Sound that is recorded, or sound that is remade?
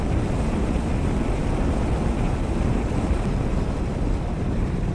recorded